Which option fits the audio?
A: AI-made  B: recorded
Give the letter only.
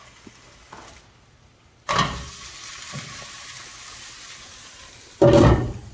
B